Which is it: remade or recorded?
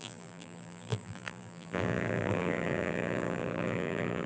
remade